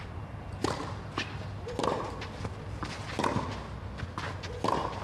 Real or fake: real